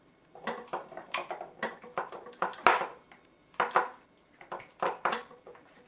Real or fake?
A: fake